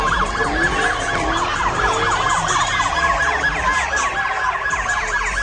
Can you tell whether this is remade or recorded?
recorded